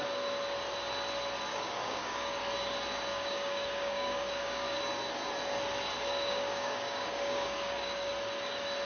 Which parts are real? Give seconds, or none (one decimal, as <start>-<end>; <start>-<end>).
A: 0.0-1.5; 2.4-3.1; 4.8-6.1; 8.1-8.9